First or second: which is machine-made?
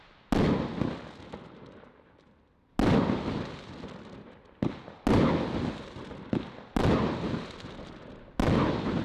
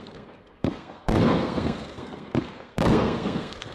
second